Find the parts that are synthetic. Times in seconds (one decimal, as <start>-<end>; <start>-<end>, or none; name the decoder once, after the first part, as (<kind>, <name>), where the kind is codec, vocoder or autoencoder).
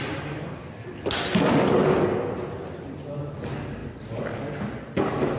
none